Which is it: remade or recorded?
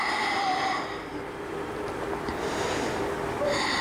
recorded